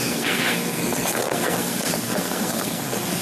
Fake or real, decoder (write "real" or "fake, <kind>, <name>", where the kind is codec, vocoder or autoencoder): fake, codec, SNAC